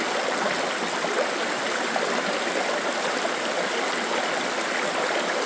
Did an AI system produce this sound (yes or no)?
no